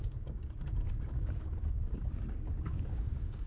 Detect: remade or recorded remade